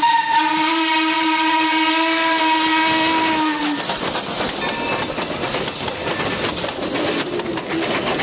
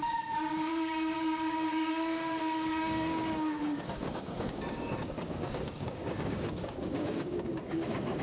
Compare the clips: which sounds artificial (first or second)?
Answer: second